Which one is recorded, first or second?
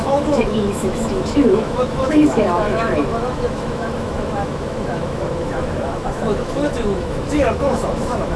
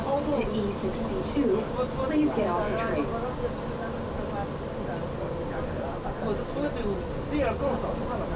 second